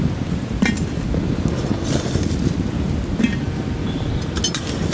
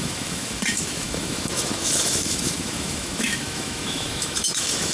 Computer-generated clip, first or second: second